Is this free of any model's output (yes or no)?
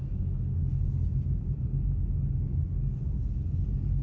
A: yes